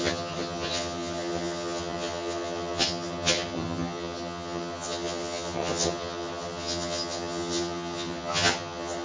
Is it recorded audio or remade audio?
remade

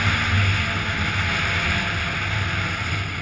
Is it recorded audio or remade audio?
recorded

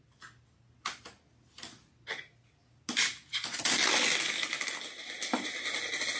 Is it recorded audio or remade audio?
recorded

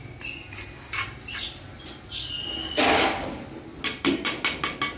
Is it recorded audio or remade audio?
recorded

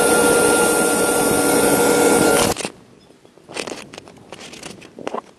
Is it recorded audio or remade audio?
recorded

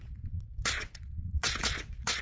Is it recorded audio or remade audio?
remade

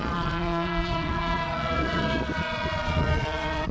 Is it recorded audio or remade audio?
remade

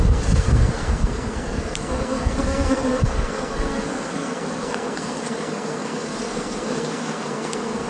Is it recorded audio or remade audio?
remade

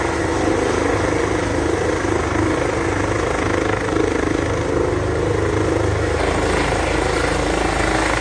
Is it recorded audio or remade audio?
recorded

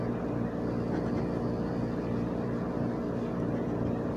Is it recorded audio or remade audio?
recorded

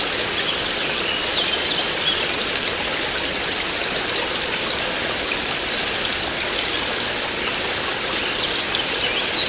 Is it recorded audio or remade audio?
recorded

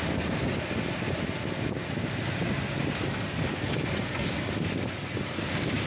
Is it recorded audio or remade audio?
recorded